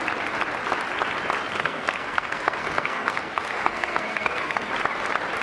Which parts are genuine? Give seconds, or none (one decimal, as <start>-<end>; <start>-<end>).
0.0-1.5; 4.7-5.4